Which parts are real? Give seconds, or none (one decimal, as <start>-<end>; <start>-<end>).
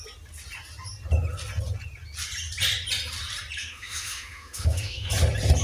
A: 0.0-3.6; 5.1-5.6